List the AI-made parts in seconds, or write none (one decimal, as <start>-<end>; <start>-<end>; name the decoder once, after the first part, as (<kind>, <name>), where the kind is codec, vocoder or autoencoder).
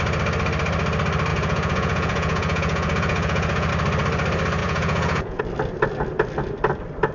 1.3-3.7 (vocoder, Vocos); 4.6-5.4